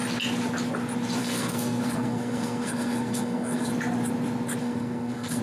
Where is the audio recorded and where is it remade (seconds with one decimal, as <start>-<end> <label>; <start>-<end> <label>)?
0.0-1.2 recorded; 1.2-3.7 remade; 3.7-4.6 recorded; 4.6-5.4 remade

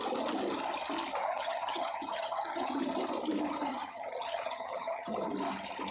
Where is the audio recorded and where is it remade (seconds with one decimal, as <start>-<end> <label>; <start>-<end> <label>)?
0.0-1.2 recorded; 1.2-2.8 remade; 2.8-3.7 recorded; 3.7-5.3 remade; 5.3-5.9 recorded

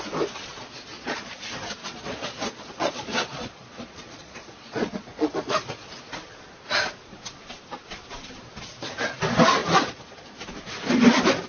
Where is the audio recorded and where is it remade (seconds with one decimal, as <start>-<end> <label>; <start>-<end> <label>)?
0.0-0.9 recorded; 0.9-1.4 remade; 1.4-1.8 recorded; 1.8-5.9 remade; 5.9-9.6 recorded; 9.6-10.4 remade; 10.4-11.5 recorded

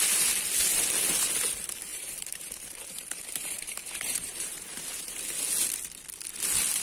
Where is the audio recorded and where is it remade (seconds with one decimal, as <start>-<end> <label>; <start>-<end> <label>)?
0.0-1.9 recorded; 1.9-5.2 remade; 5.2-6.8 recorded